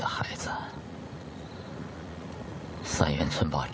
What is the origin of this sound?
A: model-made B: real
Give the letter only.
A